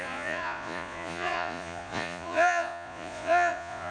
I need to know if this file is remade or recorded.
remade